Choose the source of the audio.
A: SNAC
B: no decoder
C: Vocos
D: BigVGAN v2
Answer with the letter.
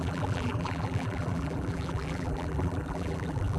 D